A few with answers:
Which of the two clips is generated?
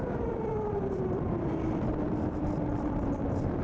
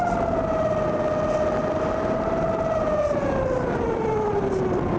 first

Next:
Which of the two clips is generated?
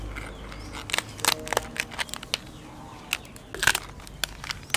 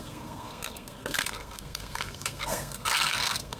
second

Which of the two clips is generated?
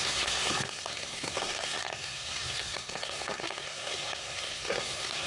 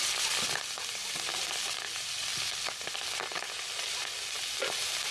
first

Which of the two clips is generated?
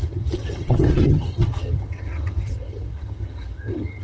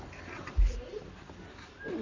first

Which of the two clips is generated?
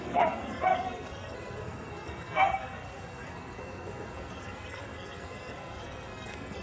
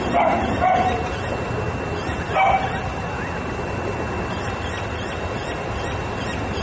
first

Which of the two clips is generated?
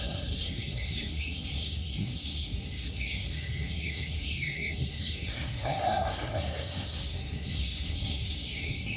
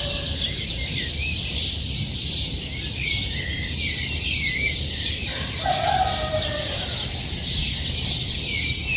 first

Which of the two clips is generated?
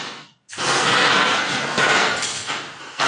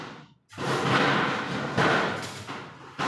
first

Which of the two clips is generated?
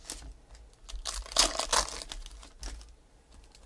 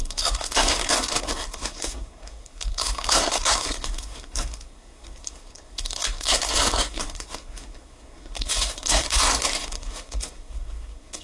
second